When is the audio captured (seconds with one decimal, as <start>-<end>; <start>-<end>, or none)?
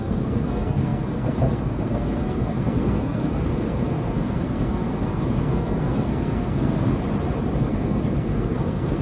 6.9-7.6